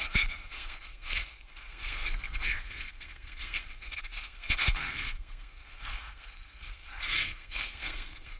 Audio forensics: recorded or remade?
remade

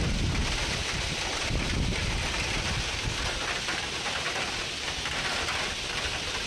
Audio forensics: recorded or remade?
recorded